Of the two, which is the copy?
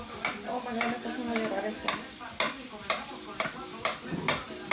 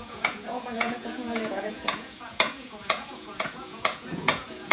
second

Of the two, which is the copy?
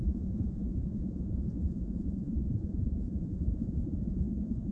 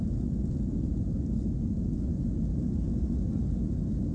first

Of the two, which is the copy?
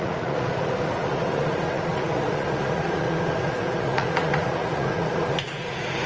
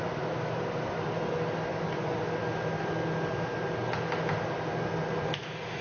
first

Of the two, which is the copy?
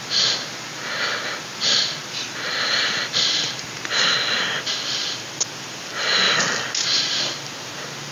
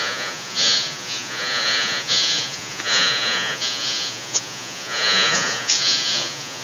second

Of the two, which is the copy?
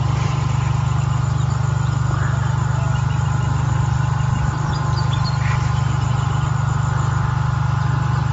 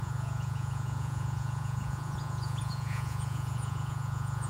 second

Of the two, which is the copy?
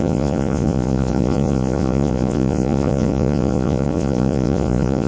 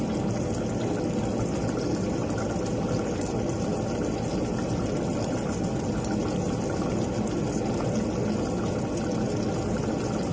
first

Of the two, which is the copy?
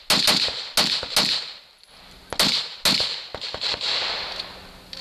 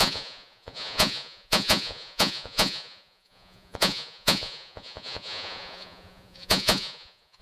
second